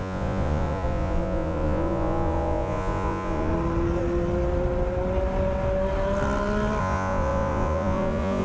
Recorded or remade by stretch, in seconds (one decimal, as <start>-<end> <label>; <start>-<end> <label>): 0.0-3.5 remade; 3.5-6.8 recorded; 6.8-8.4 remade

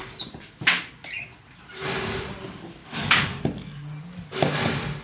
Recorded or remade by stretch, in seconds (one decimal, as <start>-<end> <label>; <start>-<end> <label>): 0.0-2.8 recorded; 2.8-3.4 remade; 3.4-5.0 recorded

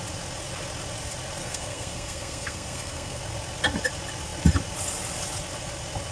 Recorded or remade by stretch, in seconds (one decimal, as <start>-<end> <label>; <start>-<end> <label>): 0.0-1.4 recorded; 1.4-3.2 remade; 3.2-6.1 recorded

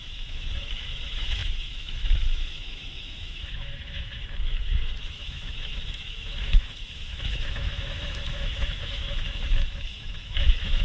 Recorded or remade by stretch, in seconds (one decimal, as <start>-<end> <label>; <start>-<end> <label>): 0.0-10.8 remade

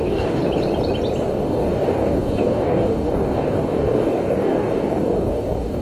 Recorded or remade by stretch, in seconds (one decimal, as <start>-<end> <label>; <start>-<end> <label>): 0.0-0.4 remade; 0.4-1.3 recorded; 1.3-5.8 remade

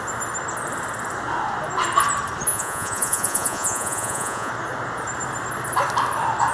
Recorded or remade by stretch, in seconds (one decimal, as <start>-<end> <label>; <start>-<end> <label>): 0.0-2.5 recorded; 2.5-4.5 remade; 4.5-6.5 recorded

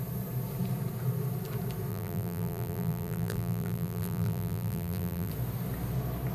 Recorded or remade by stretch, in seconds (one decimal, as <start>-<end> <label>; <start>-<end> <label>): 0.0-1.9 recorded; 1.9-5.3 remade; 5.3-6.3 recorded

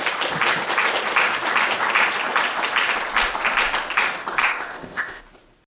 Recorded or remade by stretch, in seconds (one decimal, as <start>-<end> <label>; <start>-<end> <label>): 0.0-4.4 recorded; 4.4-5.2 remade; 5.2-5.7 recorded